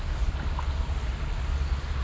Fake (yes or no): no